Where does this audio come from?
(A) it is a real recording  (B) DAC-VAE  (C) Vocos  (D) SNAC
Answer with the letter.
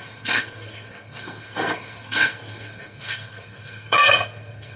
D